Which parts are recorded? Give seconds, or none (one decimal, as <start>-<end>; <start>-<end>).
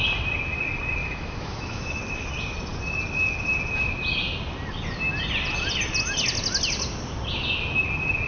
0.0-1.0; 2.0-8.3